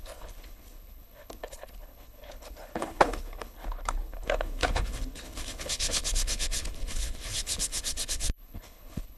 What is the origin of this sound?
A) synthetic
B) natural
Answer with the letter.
A